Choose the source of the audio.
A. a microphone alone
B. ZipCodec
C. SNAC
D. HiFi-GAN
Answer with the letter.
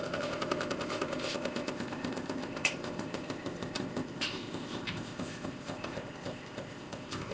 B